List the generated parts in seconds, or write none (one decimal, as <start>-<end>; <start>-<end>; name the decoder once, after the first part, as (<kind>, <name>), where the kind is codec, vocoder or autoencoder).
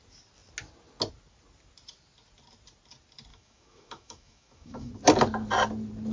3.3-4.9 (autoencoder, DAC-VAE)